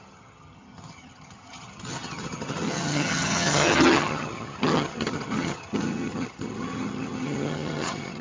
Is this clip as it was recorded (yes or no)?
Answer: no